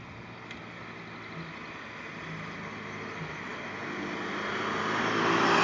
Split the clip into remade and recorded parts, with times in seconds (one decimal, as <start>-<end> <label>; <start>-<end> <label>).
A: 0.0-5.6 recorded

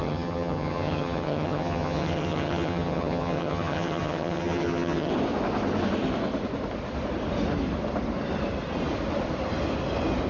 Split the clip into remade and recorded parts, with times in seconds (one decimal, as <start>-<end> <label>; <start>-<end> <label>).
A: 0.0-5.1 remade; 5.1-10.3 recorded

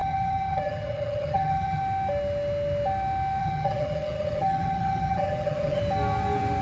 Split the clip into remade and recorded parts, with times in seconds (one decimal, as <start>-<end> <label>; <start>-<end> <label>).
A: 0.0-1.8 remade; 1.8-3.4 recorded; 3.4-5.8 remade; 5.8-6.6 recorded

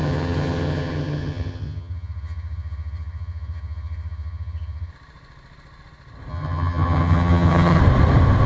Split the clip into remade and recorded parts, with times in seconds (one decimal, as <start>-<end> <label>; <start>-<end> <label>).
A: 0.0-4.9 remade; 4.9-6.3 recorded; 6.3-7.8 remade; 7.8-8.5 recorded

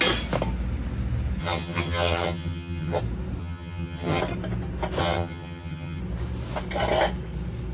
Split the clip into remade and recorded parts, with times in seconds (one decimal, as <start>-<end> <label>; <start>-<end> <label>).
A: 0.0-1.4 recorded; 1.4-3.0 remade; 3.0-3.4 recorded; 3.4-4.2 remade; 4.2-5.0 recorded; 5.0-6.0 remade; 6.0-7.7 recorded

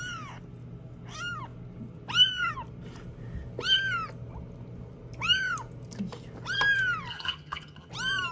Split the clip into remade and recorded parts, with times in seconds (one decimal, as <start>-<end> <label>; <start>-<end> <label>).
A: 0.0-7.1 recorded; 7.1-7.9 remade; 7.9-8.3 recorded

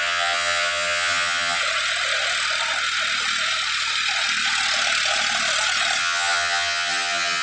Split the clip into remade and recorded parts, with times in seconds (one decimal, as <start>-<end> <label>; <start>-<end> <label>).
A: 0.0-1.6 remade; 1.6-6.0 recorded; 6.0-7.4 remade

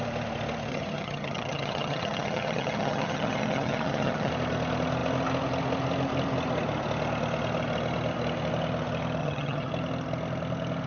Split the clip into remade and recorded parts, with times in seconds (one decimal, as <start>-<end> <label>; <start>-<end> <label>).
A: 0.0-0.7 recorded; 0.7-4.3 remade; 4.3-9.2 recorded; 9.2-9.7 remade; 9.7-10.9 recorded